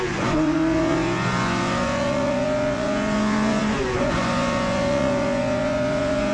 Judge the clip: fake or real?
fake